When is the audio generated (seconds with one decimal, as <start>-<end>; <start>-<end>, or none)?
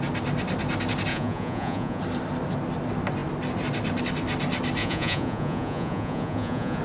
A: 1.1-2.0; 4.8-6.8